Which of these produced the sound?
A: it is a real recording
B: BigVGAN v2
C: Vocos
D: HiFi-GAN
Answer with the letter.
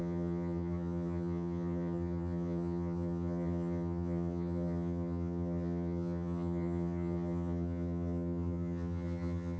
D